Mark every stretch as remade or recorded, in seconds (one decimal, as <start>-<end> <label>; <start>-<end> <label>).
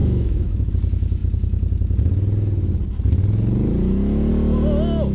0.0-0.7 remade; 0.7-5.1 recorded